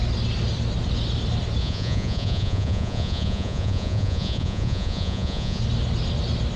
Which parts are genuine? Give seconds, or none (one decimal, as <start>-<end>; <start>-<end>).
0.0-1.6; 5.6-6.6